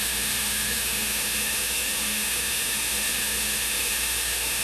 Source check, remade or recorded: remade